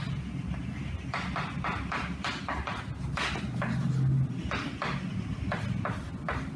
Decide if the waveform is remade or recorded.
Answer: recorded